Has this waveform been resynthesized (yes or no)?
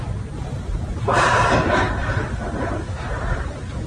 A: yes